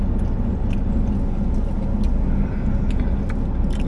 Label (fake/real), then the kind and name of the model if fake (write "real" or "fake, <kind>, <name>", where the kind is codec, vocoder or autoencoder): real